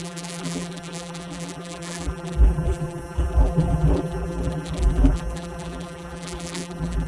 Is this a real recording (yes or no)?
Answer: no